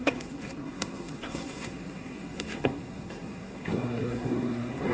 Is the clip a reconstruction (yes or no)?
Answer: yes